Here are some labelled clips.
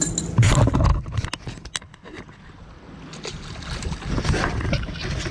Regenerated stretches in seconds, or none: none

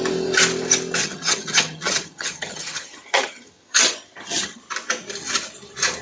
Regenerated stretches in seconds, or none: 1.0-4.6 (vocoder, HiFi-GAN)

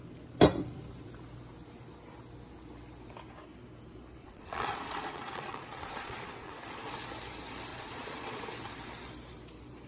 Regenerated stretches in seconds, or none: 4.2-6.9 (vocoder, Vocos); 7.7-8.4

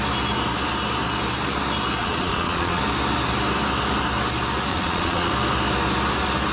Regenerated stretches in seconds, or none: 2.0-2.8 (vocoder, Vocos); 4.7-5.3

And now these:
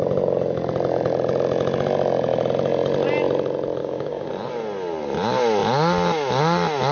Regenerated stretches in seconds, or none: 3.8-4.3 (codec, DAC)